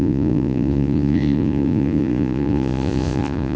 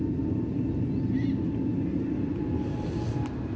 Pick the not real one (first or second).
first